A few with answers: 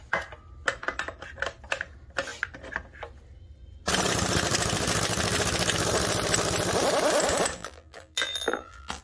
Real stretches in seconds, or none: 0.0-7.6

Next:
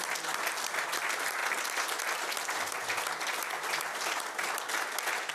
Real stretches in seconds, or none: 0.0-5.3

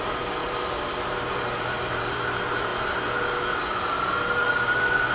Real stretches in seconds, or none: 0.0-0.4; 2.0-5.1

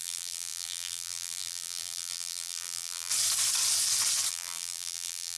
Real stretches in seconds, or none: 3.1-4.3

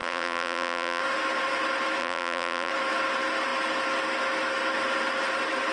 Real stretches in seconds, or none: 1.0-2.0; 2.7-5.7

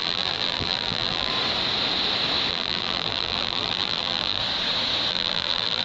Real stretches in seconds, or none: 1.3-2.5; 4.4-5.1

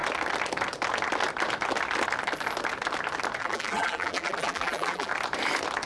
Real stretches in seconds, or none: 0.0-3.4; 5.1-5.9

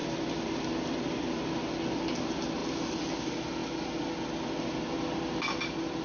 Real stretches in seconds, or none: 0.0-6.0